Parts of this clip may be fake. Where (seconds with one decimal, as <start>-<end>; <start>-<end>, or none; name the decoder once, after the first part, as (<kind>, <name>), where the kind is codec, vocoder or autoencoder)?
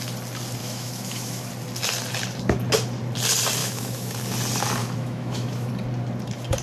0.6-1.5 (autoencoder, DAC-VAE); 3.6-4.1; 4.8-5.7